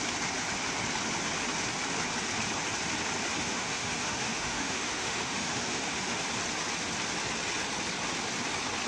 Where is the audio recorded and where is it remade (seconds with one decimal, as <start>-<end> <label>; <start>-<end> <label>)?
0.0-3.4 recorded; 3.4-6.2 remade; 6.2-8.9 recorded